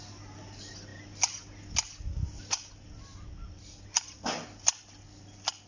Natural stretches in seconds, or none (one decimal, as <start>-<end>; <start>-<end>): 0.0-3.1